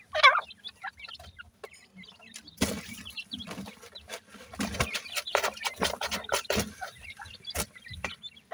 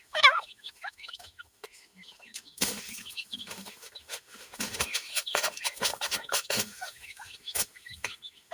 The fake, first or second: second